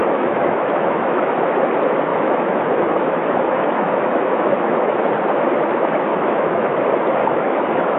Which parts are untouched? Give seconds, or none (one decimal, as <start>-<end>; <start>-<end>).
1.4-2.1; 5.0-6.1; 6.8-7.2